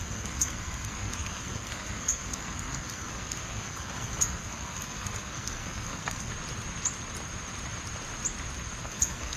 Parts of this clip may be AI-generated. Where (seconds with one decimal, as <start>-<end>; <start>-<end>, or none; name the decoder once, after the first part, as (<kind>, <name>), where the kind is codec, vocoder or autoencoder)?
0.0-6.3 (codec, SNAC); 8.8-9.4